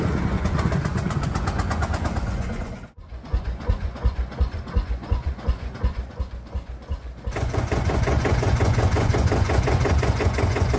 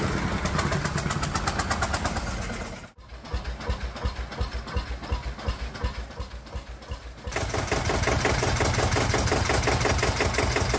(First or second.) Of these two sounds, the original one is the second